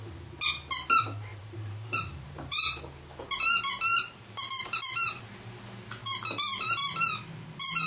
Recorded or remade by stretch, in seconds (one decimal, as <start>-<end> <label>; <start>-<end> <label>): 0.0-1.3 recorded; 1.3-2.8 remade; 2.8-3.9 recorded; 3.9-5.2 remade; 5.2-6.0 recorded; 6.0-6.9 remade; 6.9-7.9 recorded

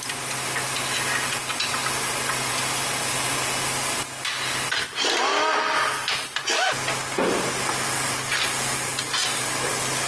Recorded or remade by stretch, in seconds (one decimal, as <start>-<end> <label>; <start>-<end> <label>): 0.0-10.1 recorded

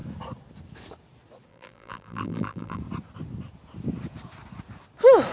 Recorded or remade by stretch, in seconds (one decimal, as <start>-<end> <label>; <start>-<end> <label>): 0.0-1.5 recorded; 1.5-2.8 remade; 2.8-5.3 recorded

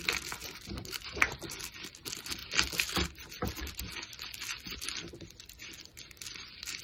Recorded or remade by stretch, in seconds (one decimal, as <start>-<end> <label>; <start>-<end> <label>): 0.0-0.4 recorded; 0.4-1.1 remade; 1.1-6.8 recorded